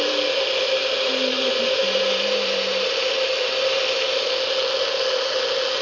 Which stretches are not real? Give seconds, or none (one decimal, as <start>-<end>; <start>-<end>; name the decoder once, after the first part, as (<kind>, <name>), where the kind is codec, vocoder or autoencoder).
0.8-4.3 (vocoder, BigVGAN v2)